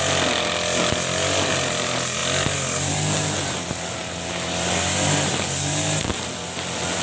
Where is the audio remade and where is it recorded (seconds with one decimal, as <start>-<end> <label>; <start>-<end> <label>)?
0.0-7.0 recorded